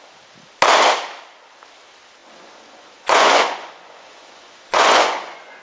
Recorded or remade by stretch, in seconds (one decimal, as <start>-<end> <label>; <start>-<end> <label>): 0.0-2.2 recorded; 2.2-5.6 remade